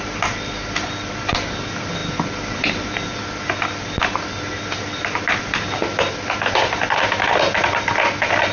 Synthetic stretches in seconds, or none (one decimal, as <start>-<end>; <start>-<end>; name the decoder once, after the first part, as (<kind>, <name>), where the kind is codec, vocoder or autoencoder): none